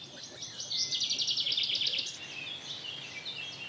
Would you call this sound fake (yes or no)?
no